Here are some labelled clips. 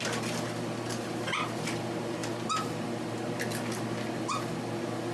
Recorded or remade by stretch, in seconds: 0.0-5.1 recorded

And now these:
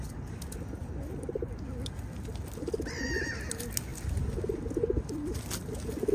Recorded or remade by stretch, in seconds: 0.0-6.1 recorded

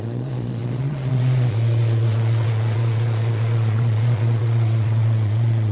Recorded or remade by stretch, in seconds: 0.0-5.7 remade